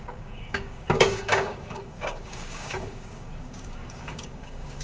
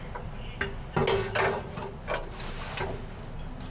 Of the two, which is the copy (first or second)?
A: first